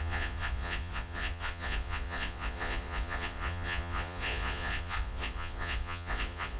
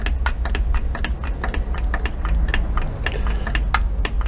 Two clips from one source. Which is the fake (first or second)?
first